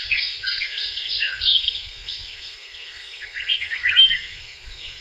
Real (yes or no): no